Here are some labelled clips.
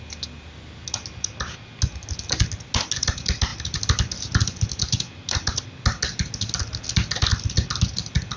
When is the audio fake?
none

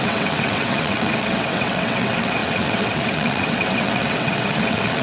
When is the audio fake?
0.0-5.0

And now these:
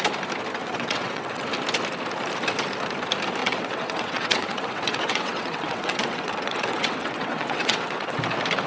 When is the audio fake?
0.6-1.5; 3.4-8.2